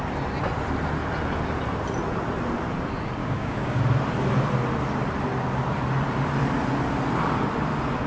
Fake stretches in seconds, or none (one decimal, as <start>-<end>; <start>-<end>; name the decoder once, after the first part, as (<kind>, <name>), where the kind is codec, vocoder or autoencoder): 3.2-3.8 (codec, DAC)

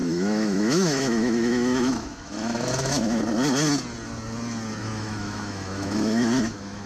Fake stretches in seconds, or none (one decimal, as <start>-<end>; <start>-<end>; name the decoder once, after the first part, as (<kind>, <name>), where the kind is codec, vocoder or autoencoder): 0.0-3.2 (autoencoder, DAC-VAE); 4.8-6.9

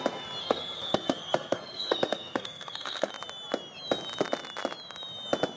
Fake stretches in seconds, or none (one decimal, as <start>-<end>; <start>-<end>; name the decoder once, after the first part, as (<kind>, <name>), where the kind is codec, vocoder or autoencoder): 0.4-3.1 (codec, SNAC)

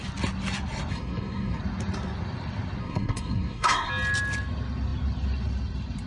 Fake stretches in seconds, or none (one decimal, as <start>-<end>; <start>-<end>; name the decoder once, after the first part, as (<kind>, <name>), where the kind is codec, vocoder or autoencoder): 0.9-1.6 (codec, SNAC); 2.8-3.9

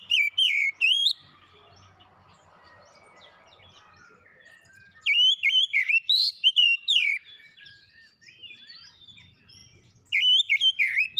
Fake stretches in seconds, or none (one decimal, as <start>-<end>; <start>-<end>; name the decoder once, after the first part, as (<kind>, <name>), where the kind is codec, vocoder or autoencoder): 0.0-1.6 (vocoder, BigVGAN v2); 5.6-9.6; 10.7-11.2

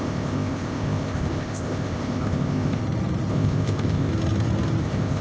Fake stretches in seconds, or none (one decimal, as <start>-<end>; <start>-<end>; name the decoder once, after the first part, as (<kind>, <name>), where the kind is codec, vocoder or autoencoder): 0.0-2.8 (codec, ZipCodec); 3.3-4.1; 4.8-5.2

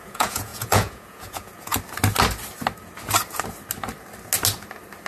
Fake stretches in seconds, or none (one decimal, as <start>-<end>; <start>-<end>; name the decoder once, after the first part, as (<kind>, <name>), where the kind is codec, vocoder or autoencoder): 0.0-1.7 (vocoder, Vocos)